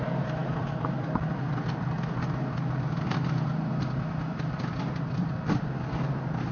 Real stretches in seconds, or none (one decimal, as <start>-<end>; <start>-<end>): 0.0-6.5